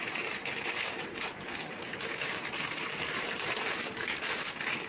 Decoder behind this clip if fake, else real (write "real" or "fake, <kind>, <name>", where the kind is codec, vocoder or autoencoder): fake, vocoder, BigVGAN v2